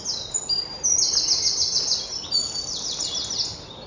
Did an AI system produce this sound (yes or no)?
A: no